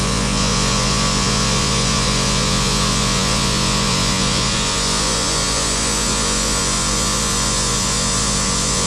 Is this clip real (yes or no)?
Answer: no